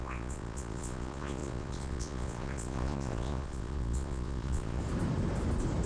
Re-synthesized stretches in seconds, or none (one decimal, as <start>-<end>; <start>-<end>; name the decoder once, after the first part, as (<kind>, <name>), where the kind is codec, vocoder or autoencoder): 0.0-4.8 (vocoder, Vocos)